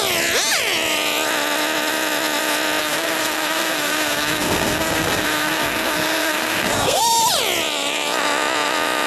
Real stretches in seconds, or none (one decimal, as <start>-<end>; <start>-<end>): 0.0-2.8; 7.0-9.1